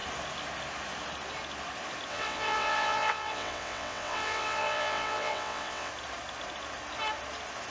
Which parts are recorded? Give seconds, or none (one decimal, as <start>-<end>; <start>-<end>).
0.0-2.1; 5.9-7.7